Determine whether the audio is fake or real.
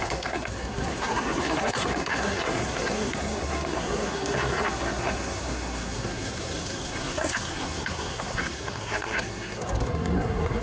fake